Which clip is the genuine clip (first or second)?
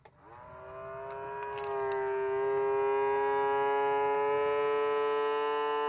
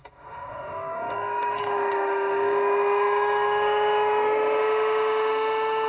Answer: first